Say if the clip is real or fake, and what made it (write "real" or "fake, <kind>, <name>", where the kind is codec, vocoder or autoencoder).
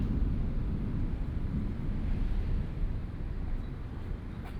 real